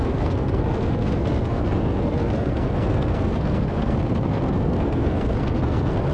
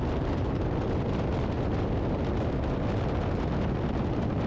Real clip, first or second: second